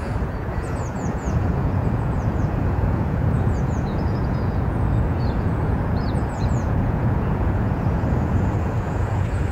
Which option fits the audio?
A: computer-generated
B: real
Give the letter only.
A